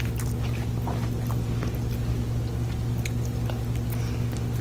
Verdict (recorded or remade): recorded